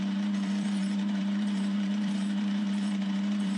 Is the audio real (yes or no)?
no